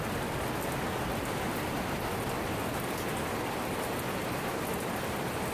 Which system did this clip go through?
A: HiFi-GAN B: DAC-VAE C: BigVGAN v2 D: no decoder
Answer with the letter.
D